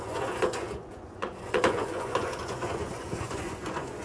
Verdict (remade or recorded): remade